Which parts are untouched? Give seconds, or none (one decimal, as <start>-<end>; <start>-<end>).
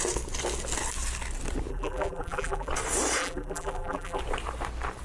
0.0-1.7; 2.7-3.2; 4.2-5.0